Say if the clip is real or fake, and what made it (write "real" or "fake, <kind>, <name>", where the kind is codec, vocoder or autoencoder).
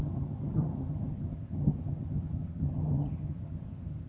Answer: fake, vocoder, HiFi-GAN